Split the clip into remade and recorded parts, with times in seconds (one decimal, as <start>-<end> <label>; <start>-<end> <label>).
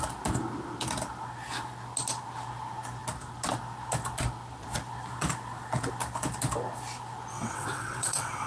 0.0-7.3 recorded; 7.3-8.5 remade